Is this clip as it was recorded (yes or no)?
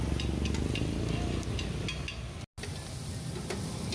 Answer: yes